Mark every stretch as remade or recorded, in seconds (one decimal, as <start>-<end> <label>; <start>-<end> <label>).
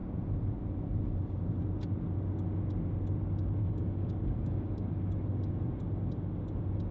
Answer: 0.0-3.6 recorded; 3.6-4.9 remade; 4.9-6.9 recorded